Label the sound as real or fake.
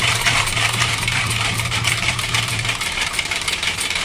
fake